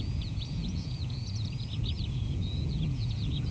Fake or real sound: fake